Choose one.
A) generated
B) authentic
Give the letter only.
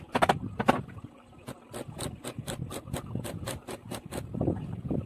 B